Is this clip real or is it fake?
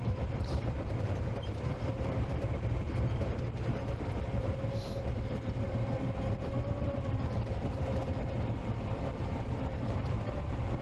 fake